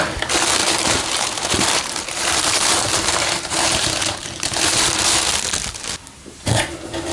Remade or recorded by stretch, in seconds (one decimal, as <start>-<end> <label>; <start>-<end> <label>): 0.0-0.6 recorded; 0.6-4.9 remade; 4.9-7.1 recorded